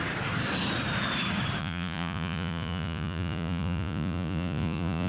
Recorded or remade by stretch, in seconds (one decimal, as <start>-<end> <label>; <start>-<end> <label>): 0.0-1.6 recorded; 1.6-5.1 remade